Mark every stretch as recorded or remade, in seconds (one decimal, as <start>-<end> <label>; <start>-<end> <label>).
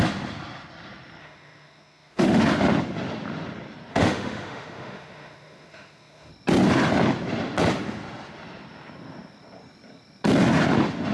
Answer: 0.0-1.2 recorded; 1.2-2.4 remade; 2.4-3.9 recorded; 3.9-6.3 remade; 6.3-11.1 recorded